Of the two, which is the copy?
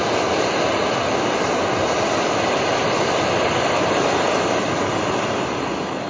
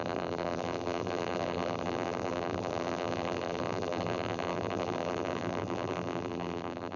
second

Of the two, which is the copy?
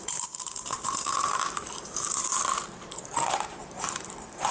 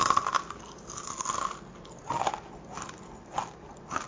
first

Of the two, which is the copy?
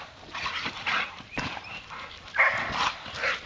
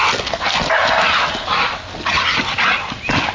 first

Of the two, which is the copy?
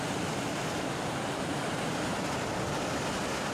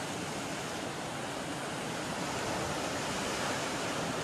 first